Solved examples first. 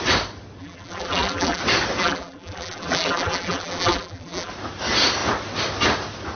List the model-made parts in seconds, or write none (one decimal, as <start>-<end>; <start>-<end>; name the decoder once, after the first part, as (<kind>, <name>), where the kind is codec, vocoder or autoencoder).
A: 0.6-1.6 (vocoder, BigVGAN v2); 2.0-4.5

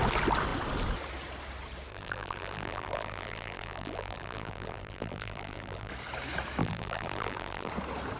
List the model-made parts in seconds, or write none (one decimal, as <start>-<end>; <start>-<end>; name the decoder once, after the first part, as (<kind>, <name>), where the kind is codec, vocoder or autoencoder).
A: 1.9-5.9 (vocoder, BigVGAN v2); 6.6-7.7

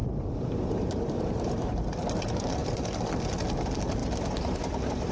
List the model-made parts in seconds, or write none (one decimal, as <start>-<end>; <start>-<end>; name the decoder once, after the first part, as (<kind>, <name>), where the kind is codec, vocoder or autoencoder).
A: 0.0-1.2 (vocoder, BigVGAN v2); 2.6-3.1

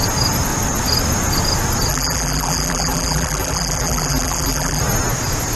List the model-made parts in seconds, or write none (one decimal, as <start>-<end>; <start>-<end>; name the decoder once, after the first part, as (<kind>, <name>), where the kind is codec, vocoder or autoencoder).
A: 1.9-4.8 (vocoder, BigVGAN v2)

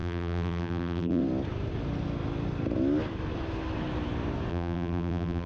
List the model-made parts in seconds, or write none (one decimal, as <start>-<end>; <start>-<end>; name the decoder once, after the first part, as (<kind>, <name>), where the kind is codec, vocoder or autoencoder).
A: 0.0-1.2 (vocoder, BigVGAN v2); 4.5-5.5

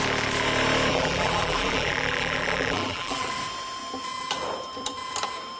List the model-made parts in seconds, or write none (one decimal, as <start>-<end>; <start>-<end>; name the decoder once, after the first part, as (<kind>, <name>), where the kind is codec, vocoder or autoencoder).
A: 0.9-3.3 (vocoder, BigVGAN v2)